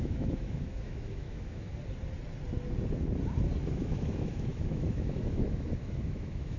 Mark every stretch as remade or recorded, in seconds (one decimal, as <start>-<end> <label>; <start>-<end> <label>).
0.0-1.7 remade; 1.7-3.7 recorded; 3.7-6.6 remade